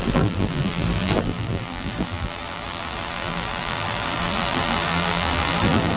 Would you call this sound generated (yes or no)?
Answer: yes